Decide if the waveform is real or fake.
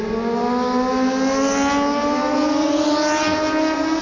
real